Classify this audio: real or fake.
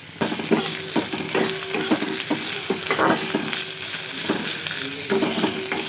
real